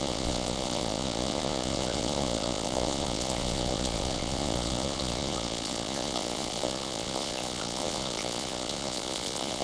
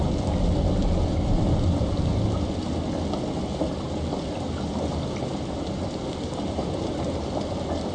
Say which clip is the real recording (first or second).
second